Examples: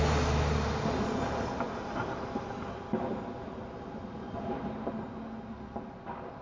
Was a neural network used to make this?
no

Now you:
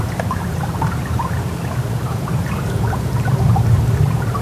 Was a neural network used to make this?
yes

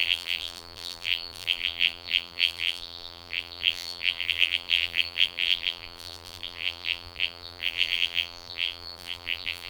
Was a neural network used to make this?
yes